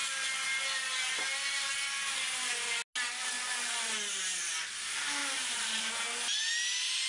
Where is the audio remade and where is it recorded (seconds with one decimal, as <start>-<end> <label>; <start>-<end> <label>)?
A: 0.0-1.7 remade; 1.7-5.2 recorded; 5.2-5.9 remade; 5.9-7.1 recorded